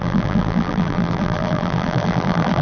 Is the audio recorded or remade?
remade